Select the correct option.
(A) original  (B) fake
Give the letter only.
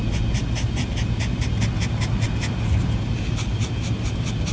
A